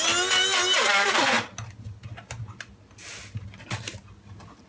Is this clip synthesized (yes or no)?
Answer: no